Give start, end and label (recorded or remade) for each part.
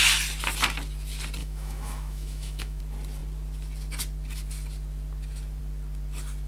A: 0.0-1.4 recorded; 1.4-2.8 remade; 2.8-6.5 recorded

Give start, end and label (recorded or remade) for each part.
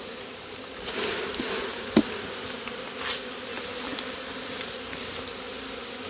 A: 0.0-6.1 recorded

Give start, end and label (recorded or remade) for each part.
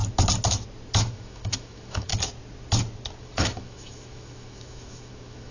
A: 0.0-1.0 recorded; 1.0-2.1 remade; 2.1-3.2 recorded; 3.2-5.5 remade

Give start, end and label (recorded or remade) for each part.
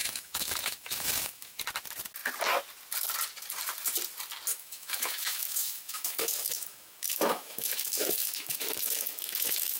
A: 0.0-1.6 remade; 1.6-4.5 recorded; 4.5-9.8 remade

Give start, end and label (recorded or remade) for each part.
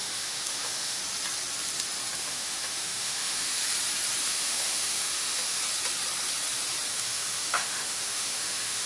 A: 0.0-1.0 remade; 1.0-2.2 recorded; 2.2-3.6 remade; 3.6-4.2 recorded; 4.2-5.6 remade; 5.6-6.9 recorded; 6.9-8.9 remade